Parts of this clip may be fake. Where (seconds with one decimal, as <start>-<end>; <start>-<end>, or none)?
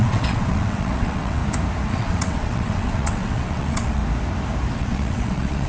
0.0-1.4; 1.9-4.0; 4.7-5.7